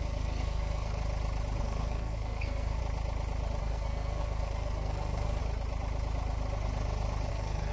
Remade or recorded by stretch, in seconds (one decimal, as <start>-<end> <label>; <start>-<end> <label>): 0.0-1.0 remade; 1.0-1.6 recorded; 1.6-2.8 remade; 2.8-3.6 recorded; 3.6-5.4 remade; 5.4-7.3 recorded; 7.3-7.7 remade